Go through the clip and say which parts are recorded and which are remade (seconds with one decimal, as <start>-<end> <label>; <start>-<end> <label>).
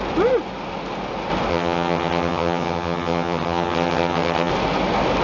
0.0-1.5 recorded; 1.5-4.5 remade; 4.5-5.2 recorded